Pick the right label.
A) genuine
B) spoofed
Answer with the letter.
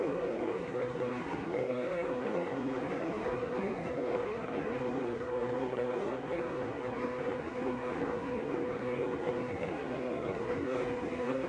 B